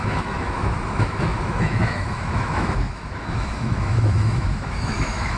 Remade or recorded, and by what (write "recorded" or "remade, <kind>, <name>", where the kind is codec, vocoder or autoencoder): remade, autoencoder, DAC-VAE